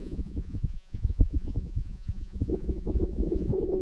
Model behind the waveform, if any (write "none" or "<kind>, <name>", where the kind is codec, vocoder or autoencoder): vocoder, Vocos